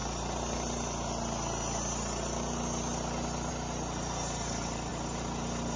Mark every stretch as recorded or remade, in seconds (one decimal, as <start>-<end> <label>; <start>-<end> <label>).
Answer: 0.0-5.8 recorded